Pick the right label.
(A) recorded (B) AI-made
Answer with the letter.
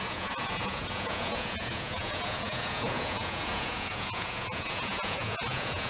B